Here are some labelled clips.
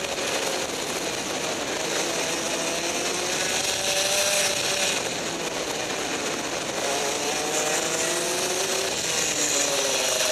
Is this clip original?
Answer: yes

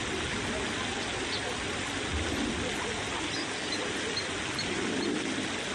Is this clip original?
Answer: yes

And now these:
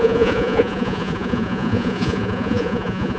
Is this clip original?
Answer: no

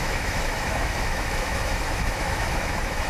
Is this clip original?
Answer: no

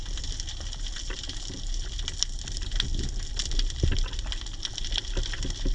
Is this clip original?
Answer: yes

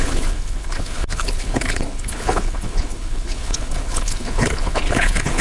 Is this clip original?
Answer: no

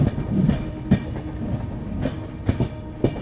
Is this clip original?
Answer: yes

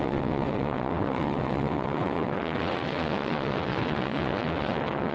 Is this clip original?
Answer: no